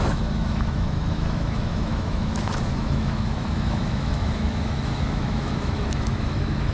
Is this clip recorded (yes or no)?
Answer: no